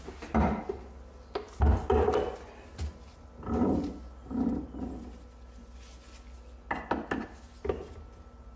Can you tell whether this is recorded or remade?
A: recorded